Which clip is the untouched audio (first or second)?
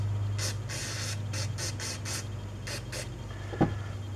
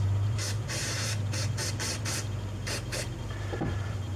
first